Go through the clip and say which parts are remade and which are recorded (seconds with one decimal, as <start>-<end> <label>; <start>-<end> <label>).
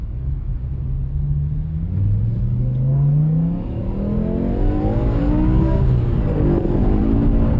0.0-0.5 remade; 0.5-2.4 recorded; 2.4-3.8 remade; 3.8-4.8 recorded; 4.8-6.8 remade; 6.8-7.6 recorded